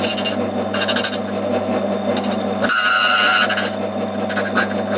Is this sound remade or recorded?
recorded